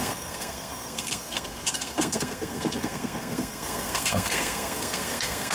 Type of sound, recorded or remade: remade